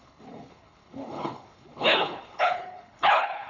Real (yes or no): no